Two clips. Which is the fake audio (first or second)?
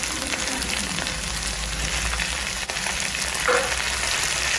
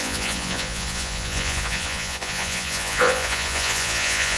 second